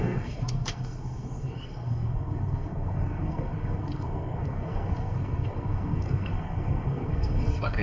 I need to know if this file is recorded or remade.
remade